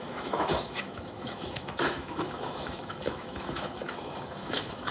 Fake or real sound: fake